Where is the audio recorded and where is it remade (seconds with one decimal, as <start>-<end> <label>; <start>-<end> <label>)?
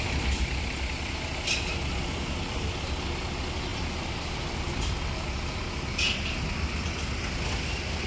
0.0-3.7 recorded; 3.7-4.5 remade; 4.5-8.1 recorded